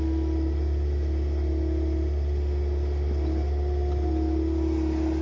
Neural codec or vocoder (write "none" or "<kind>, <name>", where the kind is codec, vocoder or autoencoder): none